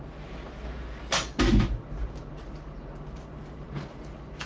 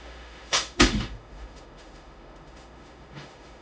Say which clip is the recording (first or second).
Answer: first